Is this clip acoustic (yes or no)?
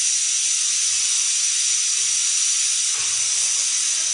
no